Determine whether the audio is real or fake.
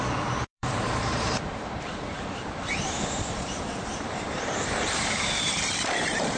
fake